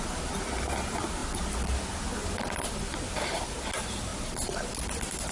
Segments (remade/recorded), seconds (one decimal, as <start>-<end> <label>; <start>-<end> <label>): 0.0-5.3 recorded